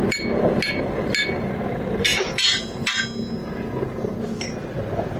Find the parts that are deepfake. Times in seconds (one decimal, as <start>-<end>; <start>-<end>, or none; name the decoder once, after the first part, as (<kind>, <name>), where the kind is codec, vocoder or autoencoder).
2.1-3.0 (vocoder, Vocos); 3.4-4.2